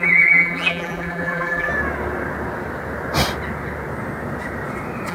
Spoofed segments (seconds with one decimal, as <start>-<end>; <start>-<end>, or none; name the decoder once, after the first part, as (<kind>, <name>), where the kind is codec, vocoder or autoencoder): 0.0-1.7 (vocoder, BigVGAN v2)